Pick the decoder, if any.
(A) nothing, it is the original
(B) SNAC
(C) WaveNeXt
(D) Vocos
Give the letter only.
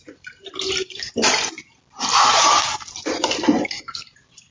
A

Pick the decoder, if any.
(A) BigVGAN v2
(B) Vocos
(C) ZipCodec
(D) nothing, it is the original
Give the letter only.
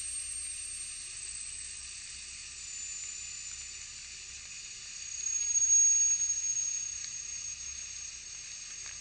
D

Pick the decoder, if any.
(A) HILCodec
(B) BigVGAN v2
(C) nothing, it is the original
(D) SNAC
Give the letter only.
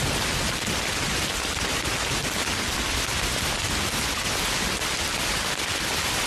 C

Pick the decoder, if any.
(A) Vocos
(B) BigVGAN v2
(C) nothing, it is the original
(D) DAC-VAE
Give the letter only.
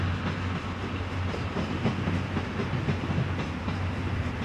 C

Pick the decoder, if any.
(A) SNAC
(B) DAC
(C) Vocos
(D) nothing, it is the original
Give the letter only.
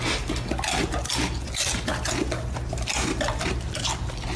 D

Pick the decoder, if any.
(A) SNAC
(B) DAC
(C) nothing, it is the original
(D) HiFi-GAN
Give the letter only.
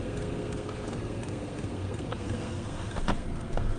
A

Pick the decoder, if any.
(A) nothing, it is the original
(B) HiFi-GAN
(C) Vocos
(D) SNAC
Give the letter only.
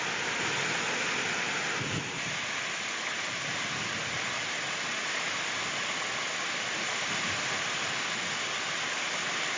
A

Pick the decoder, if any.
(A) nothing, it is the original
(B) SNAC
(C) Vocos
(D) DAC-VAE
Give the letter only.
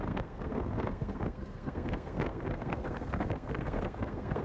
B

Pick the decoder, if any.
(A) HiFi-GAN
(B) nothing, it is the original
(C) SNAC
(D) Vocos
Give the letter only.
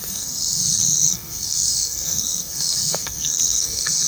C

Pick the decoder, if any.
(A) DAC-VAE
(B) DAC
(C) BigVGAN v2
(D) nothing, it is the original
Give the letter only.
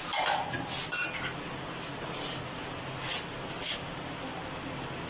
D